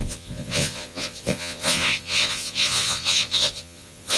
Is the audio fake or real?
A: fake